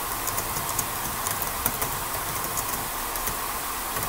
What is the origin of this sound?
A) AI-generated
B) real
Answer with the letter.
B